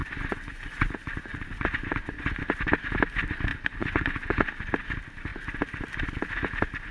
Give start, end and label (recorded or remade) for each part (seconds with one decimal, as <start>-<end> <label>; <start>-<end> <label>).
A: 0.0-2.4 remade; 2.4-3.5 recorded; 3.5-4.5 remade; 4.5-6.9 recorded